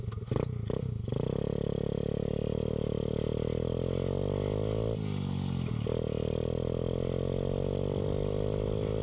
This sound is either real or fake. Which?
real